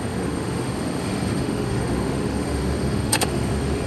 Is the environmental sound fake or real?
fake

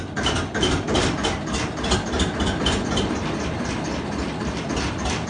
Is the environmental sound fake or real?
real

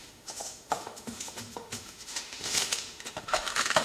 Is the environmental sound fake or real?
fake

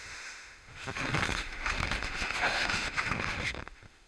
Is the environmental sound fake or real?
fake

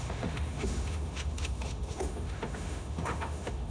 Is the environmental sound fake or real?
fake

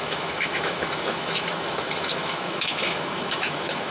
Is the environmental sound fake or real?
fake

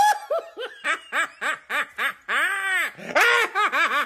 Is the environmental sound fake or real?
real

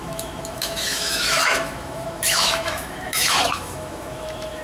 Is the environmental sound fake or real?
fake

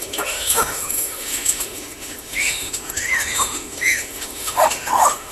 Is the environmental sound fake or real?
fake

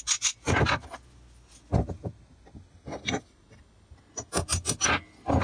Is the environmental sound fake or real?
real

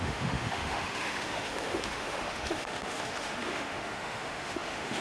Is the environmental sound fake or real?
fake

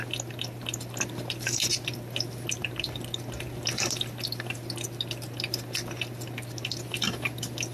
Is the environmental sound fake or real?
real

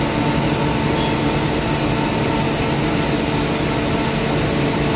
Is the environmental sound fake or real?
real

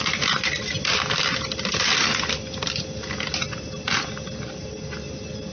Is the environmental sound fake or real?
real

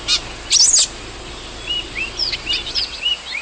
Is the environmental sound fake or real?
real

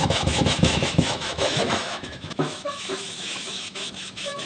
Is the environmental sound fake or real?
fake